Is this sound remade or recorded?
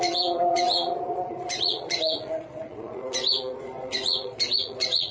remade